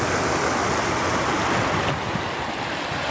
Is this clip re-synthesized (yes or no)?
no